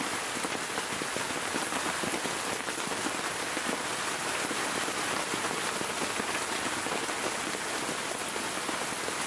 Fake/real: real